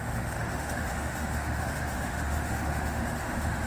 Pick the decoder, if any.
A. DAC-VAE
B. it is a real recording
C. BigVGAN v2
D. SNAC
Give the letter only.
A